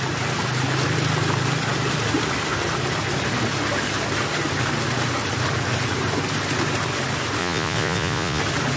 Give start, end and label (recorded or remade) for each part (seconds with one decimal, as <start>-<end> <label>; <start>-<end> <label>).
0.0-7.4 recorded; 7.4-8.4 remade; 8.4-8.8 recorded